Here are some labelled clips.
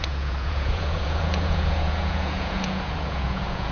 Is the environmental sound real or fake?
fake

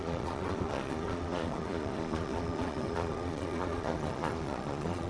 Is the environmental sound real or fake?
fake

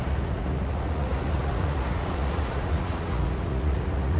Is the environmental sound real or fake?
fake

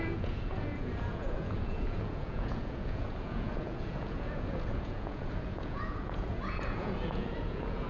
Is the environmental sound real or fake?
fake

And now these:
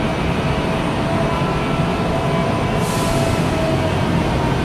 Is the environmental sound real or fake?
real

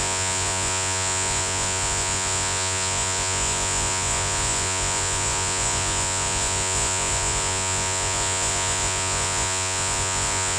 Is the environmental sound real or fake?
fake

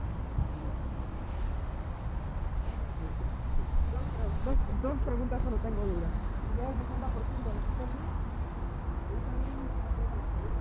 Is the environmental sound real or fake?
real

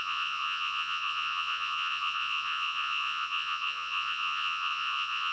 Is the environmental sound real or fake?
fake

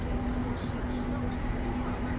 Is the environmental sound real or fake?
real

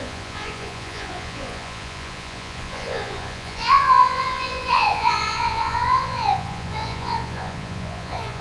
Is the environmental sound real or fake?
fake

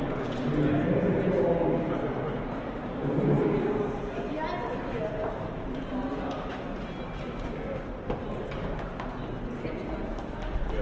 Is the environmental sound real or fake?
real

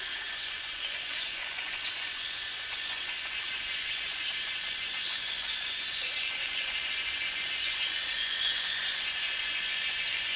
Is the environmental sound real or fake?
fake